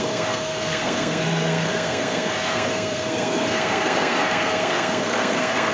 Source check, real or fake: fake